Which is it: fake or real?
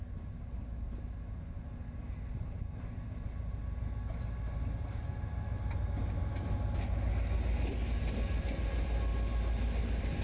real